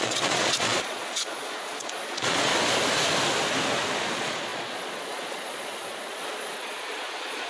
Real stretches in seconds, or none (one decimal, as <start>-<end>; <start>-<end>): 2.5-4.1